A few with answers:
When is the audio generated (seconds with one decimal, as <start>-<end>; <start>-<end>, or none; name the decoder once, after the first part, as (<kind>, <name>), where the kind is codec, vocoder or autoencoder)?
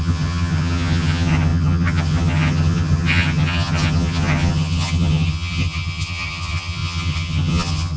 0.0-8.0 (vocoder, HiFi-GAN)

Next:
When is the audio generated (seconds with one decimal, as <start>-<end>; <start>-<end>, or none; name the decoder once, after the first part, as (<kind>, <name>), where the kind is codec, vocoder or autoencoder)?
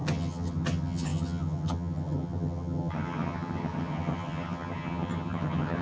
0.0-5.8 (vocoder, HiFi-GAN)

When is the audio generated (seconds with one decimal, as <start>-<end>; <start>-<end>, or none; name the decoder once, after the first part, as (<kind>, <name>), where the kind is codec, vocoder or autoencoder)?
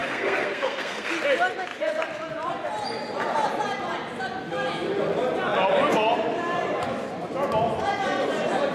0.0-1.1 (codec, SNAC)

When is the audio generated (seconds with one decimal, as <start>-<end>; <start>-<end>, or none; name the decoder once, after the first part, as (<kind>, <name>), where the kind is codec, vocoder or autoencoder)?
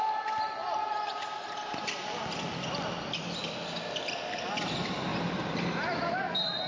none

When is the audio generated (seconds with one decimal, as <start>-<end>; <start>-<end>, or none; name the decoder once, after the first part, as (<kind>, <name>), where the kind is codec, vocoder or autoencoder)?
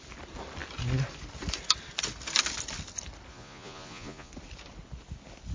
3.3-4.3 (vocoder, Vocos)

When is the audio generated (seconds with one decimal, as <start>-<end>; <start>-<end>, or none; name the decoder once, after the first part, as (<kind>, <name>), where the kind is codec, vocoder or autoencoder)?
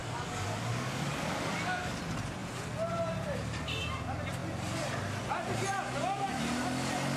0.0-2.0 (codec, DAC)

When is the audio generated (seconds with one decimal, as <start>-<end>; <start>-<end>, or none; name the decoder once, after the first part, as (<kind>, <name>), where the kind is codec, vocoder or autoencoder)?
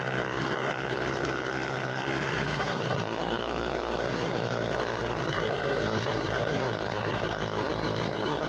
0.0-8.5 (codec, SNAC)